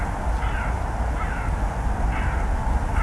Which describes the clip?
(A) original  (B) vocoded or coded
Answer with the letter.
A